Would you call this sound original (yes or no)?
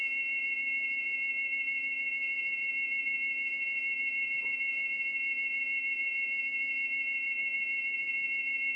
no